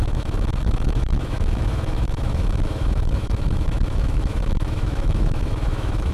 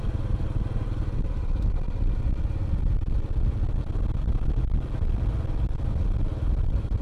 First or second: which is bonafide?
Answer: second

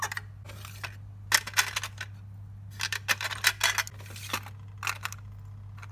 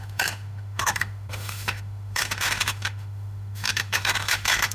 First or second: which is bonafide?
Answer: first